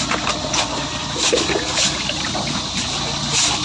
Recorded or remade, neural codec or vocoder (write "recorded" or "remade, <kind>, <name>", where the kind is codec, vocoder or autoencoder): recorded